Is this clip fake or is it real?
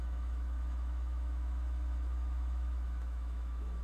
fake